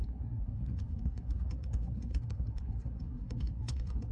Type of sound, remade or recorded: remade